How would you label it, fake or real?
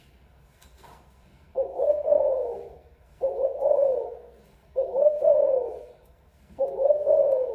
fake